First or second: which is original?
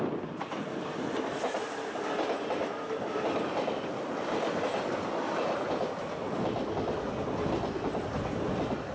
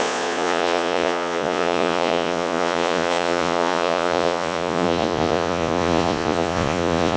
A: first